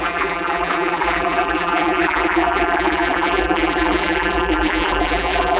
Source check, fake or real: fake